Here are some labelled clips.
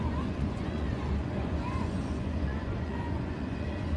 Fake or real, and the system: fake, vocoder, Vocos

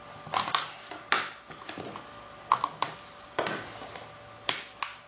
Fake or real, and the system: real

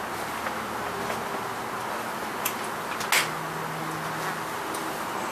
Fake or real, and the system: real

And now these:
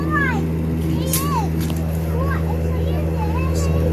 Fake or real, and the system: real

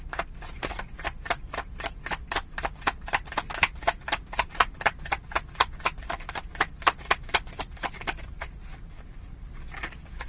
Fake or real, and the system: real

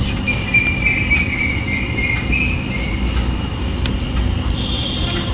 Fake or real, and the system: real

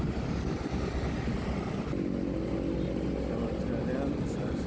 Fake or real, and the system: real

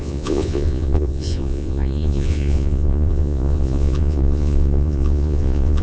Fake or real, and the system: fake, vocoder, Vocos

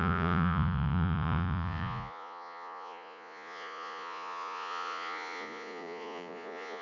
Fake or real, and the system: fake, vocoder, Vocos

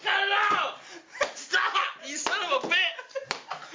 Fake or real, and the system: real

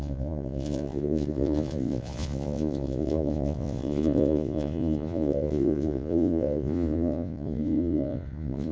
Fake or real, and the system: fake, vocoder, Vocos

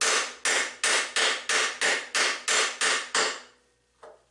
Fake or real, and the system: real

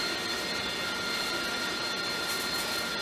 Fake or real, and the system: real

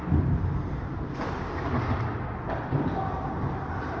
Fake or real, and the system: real